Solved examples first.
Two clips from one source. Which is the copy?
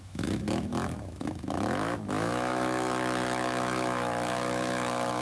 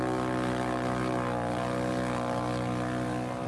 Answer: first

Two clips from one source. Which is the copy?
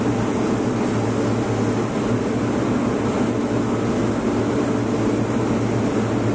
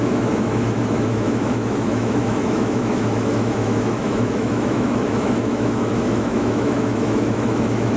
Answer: second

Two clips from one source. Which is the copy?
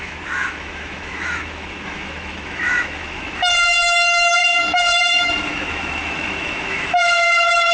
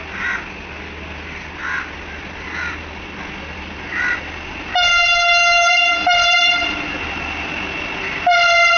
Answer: first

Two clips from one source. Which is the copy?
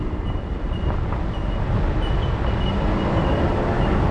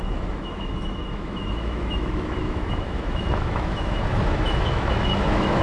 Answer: second